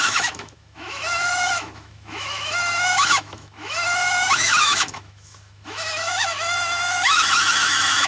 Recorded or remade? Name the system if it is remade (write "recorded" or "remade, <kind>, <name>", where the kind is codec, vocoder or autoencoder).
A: remade, autoencoder, DAC-VAE